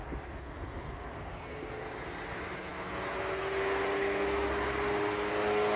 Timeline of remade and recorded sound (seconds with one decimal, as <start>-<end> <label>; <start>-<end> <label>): 0.0-5.8 recorded